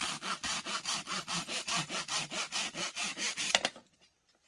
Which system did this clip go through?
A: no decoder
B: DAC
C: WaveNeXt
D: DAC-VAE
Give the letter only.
A